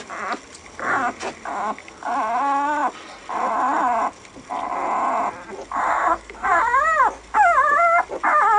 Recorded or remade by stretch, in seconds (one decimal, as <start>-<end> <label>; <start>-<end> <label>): 0.0-5.9 recorded; 5.9-6.6 remade; 6.6-8.6 recorded

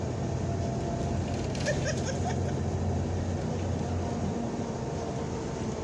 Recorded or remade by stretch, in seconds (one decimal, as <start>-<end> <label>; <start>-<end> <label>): 0.0-5.8 recorded

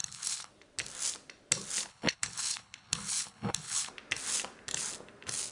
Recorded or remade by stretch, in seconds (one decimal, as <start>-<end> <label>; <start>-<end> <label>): 0.0-0.5 remade; 0.5-1.9 recorded; 1.9-3.9 remade; 3.9-5.5 recorded